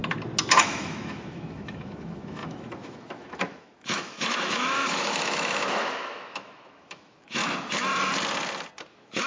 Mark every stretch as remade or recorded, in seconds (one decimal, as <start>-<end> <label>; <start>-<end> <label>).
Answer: 0.0-0.6 recorded; 0.6-7.4 remade; 7.4-8.9 recorded; 8.9-9.3 remade